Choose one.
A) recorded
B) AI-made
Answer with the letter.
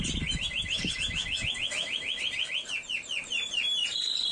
A